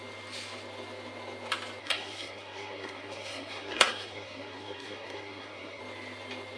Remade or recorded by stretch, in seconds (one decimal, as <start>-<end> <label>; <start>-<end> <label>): 0.0-1.8 recorded; 1.8-5.8 remade; 5.8-6.6 recorded